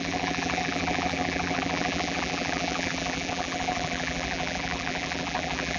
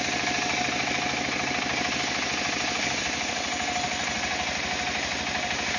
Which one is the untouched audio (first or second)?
second